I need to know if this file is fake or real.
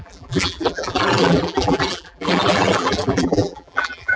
fake